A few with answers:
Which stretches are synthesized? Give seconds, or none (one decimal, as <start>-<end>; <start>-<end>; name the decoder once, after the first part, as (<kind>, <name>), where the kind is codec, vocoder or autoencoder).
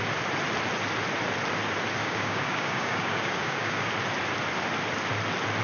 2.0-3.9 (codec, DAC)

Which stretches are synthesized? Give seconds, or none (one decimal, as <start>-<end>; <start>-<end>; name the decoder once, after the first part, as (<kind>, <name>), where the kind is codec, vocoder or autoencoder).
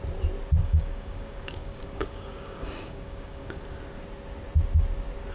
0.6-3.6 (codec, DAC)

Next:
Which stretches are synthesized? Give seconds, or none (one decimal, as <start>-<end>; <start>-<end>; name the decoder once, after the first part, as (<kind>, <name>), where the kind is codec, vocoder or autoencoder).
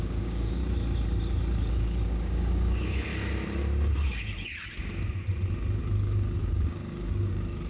0.0-0.6 (codec, DAC); 1.7-3.1; 5.8-7.7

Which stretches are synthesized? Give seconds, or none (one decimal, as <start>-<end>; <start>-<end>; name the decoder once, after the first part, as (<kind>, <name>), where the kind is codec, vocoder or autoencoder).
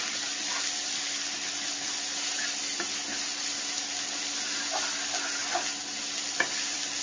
none